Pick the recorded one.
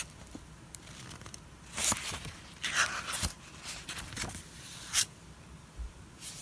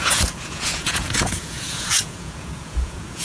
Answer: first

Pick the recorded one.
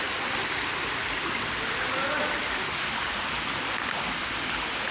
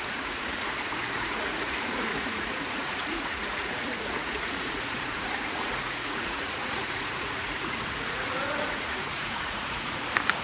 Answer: first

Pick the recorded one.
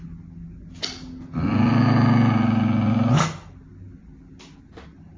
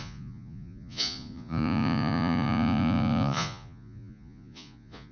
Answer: first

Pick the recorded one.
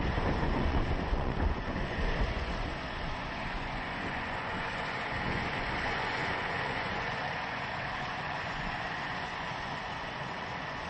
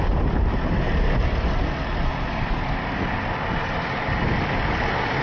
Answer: second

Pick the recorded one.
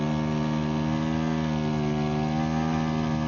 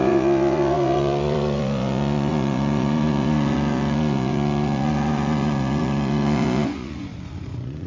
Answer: first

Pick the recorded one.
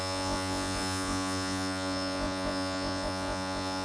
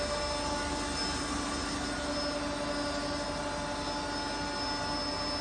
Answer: second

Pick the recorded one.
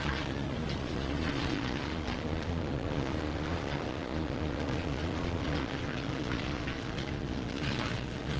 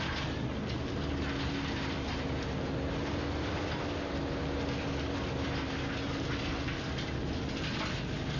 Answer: second